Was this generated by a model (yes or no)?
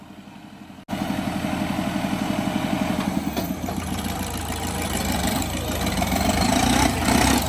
no